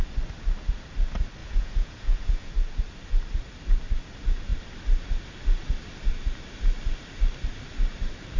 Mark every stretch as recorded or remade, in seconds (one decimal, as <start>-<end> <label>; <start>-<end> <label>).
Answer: 0.0-1.4 recorded; 1.4-2.5 remade; 2.5-8.4 recorded

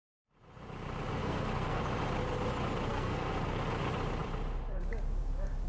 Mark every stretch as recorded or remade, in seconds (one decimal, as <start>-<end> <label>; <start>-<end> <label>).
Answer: 0.0-1.2 recorded; 1.2-1.8 remade; 1.8-2.9 recorded; 2.9-3.6 remade; 3.6-5.7 recorded

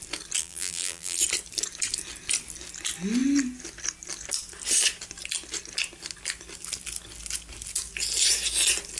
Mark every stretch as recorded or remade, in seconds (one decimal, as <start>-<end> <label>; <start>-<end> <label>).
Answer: 0.0-0.4 recorded; 0.4-1.2 remade; 1.2-9.0 recorded

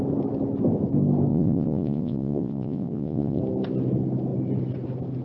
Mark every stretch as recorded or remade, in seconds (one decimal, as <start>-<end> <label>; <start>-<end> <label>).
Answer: 0.0-1.3 recorded; 1.3-3.4 remade; 3.4-5.2 recorded

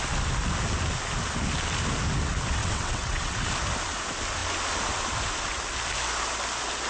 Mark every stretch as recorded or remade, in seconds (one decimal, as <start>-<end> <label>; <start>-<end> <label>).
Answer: 0.0-2.6 recorded; 2.6-3.5 remade; 3.5-6.9 recorded

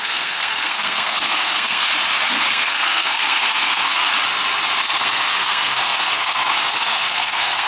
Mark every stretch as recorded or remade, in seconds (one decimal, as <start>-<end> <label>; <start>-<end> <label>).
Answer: 0.0-1.9 remade; 1.9-2.5 recorded; 2.5-4.0 remade; 4.0-4.8 recorded; 4.8-7.7 remade

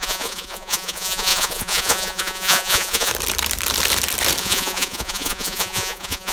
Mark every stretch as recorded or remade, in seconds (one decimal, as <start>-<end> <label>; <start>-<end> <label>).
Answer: 0.0-3.1 remade; 3.1-4.4 recorded; 4.4-6.3 remade

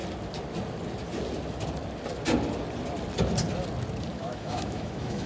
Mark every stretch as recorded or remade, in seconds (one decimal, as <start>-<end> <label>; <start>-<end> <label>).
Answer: 0.0-4.2 recorded; 4.2-5.3 remade